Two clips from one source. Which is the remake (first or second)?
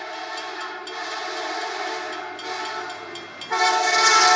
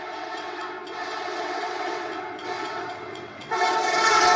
second